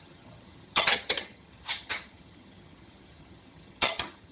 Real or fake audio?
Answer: fake